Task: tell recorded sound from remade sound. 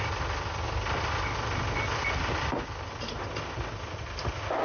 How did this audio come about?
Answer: recorded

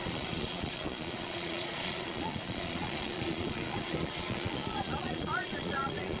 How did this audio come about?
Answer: remade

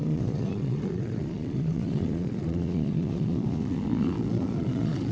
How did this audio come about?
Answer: remade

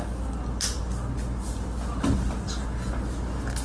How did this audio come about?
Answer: recorded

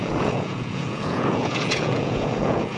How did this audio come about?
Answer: remade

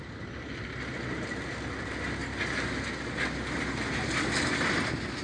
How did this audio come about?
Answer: recorded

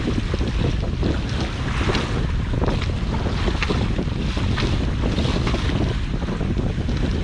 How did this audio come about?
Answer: recorded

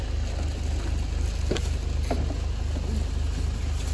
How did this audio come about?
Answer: recorded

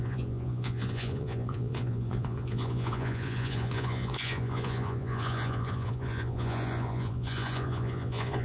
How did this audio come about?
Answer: remade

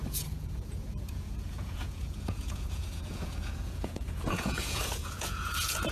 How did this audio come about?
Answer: remade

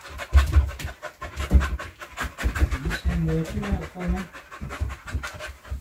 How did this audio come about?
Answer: recorded